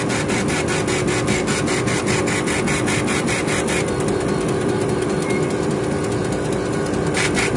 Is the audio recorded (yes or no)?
yes